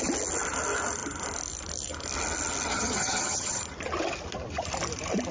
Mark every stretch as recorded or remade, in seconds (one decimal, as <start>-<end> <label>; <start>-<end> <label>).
0.0-2.7 recorded; 2.7-3.6 remade; 3.6-5.3 recorded